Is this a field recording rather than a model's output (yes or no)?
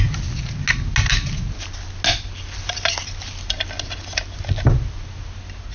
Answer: yes